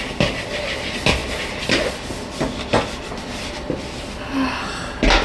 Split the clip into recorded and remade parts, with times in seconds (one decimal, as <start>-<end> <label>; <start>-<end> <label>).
0.0-1.2 recorded; 1.2-2.0 remade; 2.0-5.2 recorded

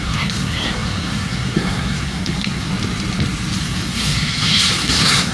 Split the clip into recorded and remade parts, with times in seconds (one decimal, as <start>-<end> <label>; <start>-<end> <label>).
0.0-2.7 remade; 2.7-3.6 recorded; 3.6-5.3 remade

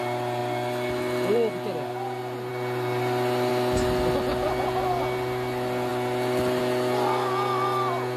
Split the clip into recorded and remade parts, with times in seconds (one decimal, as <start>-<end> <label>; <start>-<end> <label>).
0.0-8.2 recorded

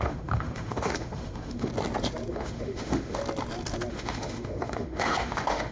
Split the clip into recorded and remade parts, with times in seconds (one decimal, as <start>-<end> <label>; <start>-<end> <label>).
0.0-1.7 remade; 1.7-2.3 recorded; 2.3-3.2 remade; 3.2-3.9 recorded; 3.9-5.7 remade